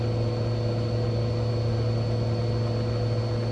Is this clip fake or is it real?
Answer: real